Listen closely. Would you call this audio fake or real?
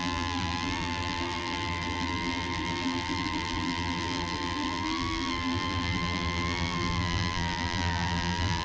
fake